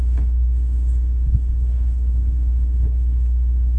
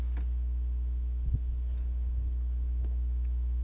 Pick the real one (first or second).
second